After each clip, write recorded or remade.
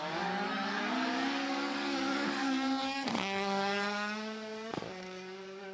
remade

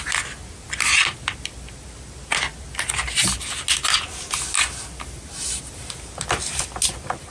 recorded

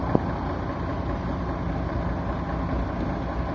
recorded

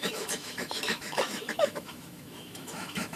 remade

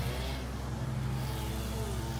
recorded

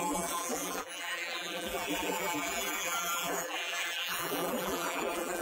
remade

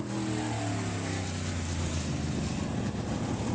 recorded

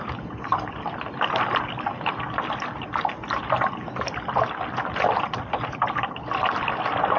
recorded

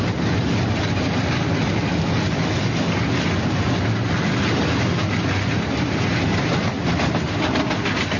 recorded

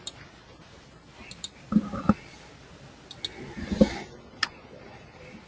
recorded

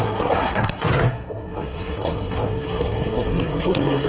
remade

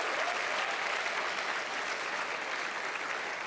recorded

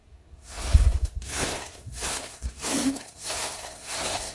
remade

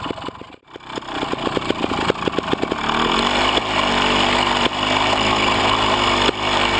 recorded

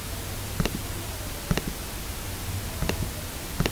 recorded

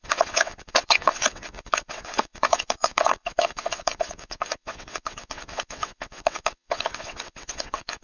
remade